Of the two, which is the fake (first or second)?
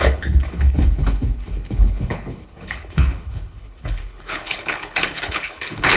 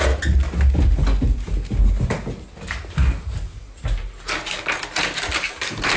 first